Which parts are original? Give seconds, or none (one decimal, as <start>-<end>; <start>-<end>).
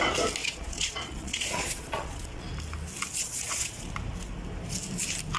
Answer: 0.0-0.4; 2.5-3.2; 3.9-5.4